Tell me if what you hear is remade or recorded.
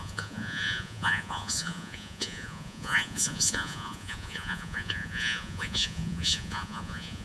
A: remade